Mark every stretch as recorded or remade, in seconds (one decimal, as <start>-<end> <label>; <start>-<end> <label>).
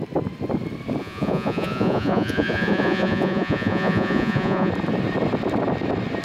0.0-1.0 recorded; 1.0-4.7 remade; 4.7-6.2 recorded